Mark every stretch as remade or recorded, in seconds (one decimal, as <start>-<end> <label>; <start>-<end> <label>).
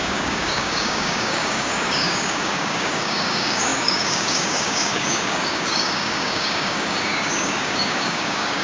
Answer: 0.0-8.6 remade